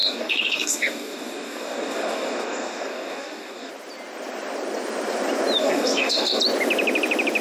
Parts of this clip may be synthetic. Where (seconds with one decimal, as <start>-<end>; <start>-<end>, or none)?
0.0-3.7; 5.6-6.4